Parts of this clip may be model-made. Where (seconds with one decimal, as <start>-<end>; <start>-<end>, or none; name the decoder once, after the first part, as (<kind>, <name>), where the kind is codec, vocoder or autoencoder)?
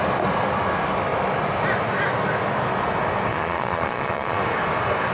3.3-4.4 (vocoder, Vocos)